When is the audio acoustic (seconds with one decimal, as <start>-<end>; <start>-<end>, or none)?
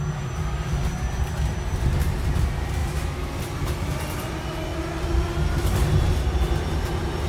0.0-7.3